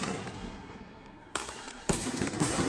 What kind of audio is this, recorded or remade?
remade